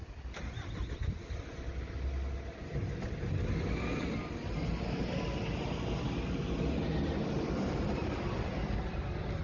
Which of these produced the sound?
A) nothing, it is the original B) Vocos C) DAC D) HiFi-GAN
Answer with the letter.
A